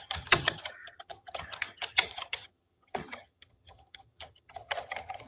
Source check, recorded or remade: remade